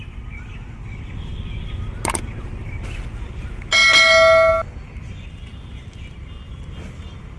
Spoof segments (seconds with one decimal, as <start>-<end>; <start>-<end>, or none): none

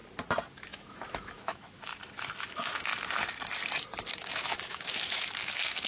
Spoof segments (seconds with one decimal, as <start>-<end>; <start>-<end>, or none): 0.6-1.9; 2.5-2.9; 4.1-5.9